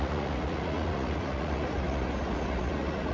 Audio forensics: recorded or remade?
remade